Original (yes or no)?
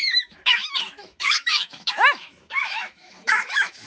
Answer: no